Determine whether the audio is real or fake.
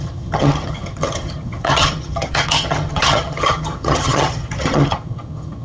fake